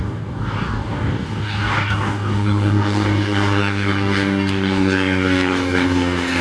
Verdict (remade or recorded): remade